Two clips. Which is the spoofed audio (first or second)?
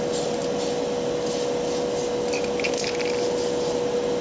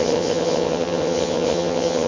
second